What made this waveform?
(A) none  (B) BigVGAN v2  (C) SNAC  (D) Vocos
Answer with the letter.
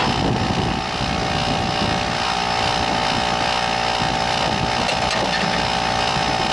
A